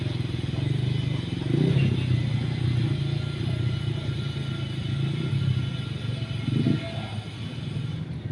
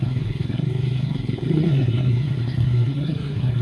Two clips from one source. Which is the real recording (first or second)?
first